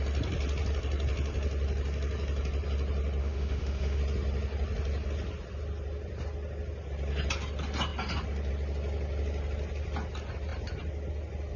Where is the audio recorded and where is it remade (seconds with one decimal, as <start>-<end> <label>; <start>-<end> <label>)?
0.0-3.2 recorded; 3.2-4.0 remade; 4.0-11.6 recorded